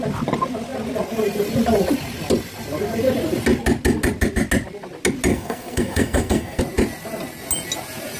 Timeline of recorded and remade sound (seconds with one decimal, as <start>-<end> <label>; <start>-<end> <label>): 0.0-5.3 recorded; 5.3-6.6 remade; 6.6-8.2 recorded